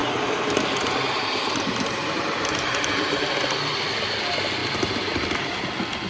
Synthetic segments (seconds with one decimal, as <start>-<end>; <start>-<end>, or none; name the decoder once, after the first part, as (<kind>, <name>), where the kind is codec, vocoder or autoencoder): 0.0-3.3 (vocoder, BigVGAN v2)